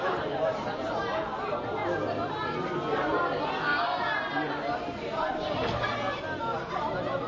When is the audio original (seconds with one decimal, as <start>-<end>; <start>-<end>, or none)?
0.0-7.3